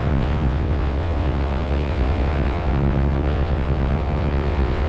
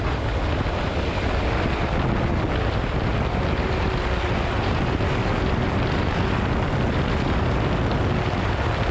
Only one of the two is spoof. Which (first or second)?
first